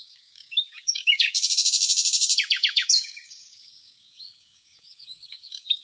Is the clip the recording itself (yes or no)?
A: no